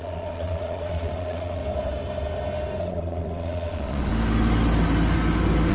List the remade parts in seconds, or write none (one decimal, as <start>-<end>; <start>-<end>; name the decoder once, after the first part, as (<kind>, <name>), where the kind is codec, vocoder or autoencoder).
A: 0.0-1.6 (vocoder, Vocos); 2.8-4.1